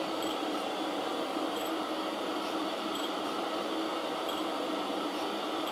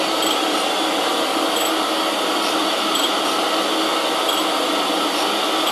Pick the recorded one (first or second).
second